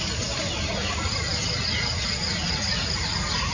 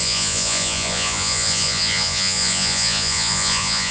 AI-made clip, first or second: second